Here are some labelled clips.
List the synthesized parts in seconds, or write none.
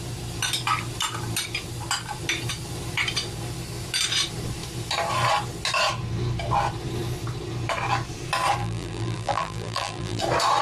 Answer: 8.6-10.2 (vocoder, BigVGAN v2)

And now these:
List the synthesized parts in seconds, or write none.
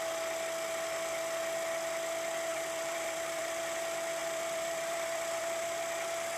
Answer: 2.5-3.6 (vocoder, BigVGAN v2); 4.2-5.8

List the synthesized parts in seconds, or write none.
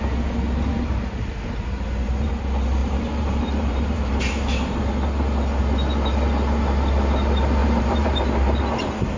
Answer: 0.7-2.3 (vocoder, BigVGAN v2); 2.8-4.9; 7.6-8.6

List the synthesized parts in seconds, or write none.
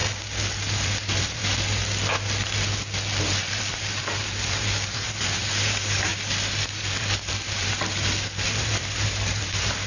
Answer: 0.6-1.4 (vocoder, BigVGAN v2); 3.2-6.1; 6.7-9.9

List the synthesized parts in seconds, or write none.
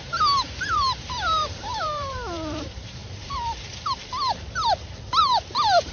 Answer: 0.0-3.0 (vocoder, BigVGAN v2); 5.2-5.9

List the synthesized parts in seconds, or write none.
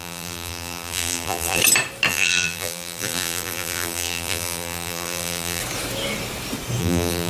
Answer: 0.0-1.6 (vocoder, BigVGAN v2); 2.1-5.6; 6.8-7.3